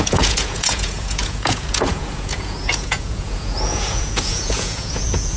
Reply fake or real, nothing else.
fake